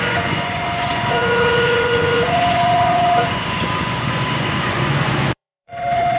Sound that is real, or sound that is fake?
fake